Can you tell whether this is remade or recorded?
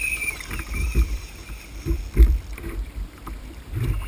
remade